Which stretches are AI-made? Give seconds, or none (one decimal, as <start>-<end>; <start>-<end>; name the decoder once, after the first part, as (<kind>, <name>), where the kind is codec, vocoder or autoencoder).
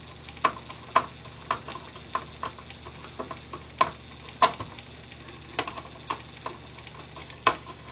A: 7.2-7.9 (codec, DAC)